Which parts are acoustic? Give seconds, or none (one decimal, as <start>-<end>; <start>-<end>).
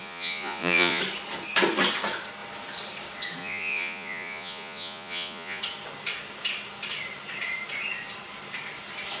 1.0-3.4; 5.6-9.2